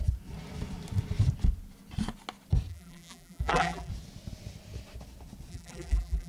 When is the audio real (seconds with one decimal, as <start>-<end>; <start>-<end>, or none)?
0.0-2.7; 3.9-5.5